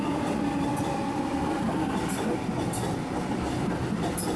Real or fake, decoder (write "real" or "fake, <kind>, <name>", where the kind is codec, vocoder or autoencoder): real